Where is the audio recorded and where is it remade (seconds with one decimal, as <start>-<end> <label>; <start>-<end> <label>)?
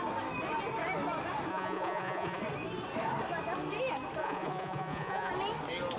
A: 0.0-1.5 recorded; 1.5-2.4 remade; 2.4-4.2 recorded; 4.2-5.3 remade; 5.3-6.0 recorded